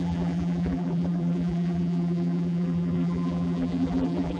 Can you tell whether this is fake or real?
fake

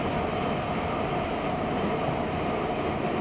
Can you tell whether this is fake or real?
real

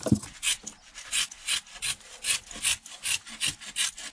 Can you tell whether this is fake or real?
real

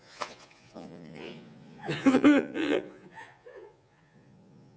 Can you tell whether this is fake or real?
fake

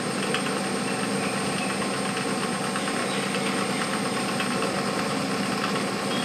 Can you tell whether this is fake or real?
real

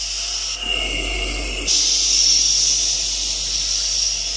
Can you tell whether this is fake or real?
real